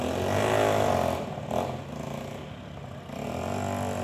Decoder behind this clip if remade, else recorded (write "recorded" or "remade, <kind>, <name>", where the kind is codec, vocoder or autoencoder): recorded